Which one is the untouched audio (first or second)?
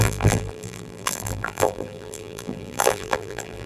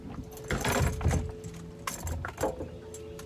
second